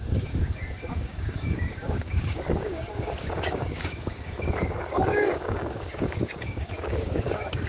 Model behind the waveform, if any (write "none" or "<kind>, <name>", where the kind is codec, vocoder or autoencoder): codec, DAC